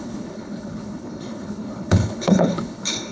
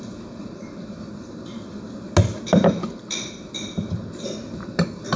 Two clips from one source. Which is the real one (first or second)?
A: second